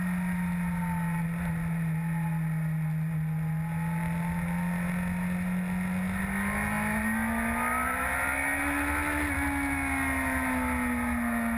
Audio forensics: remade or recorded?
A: recorded